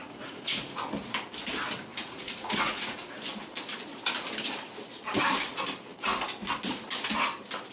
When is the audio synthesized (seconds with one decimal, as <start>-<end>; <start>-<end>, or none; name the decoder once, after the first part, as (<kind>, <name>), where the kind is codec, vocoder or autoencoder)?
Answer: 0.0-0.8 (vocoder, Vocos); 1.9-3.1